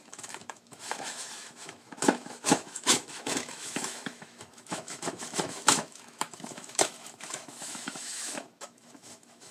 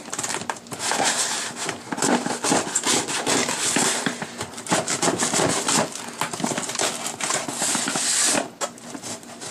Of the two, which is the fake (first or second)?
first